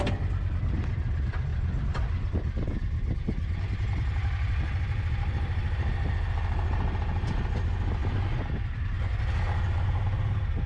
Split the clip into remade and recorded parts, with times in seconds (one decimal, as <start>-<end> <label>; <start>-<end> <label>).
0.0-1.5 recorded; 1.5-3.2 remade; 3.2-10.7 recorded